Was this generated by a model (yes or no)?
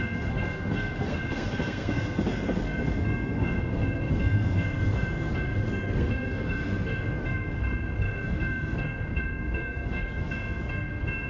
yes